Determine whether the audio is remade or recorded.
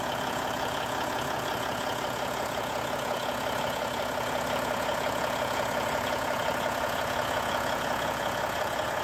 remade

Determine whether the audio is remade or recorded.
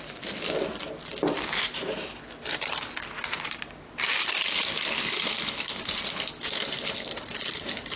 recorded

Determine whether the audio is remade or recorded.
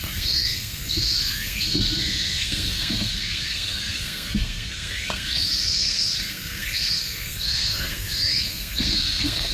remade